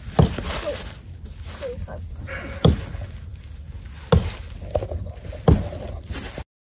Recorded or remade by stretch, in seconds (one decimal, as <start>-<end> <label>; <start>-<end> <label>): 0.0-6.6 recorded